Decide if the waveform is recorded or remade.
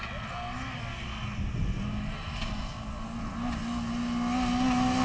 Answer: recorded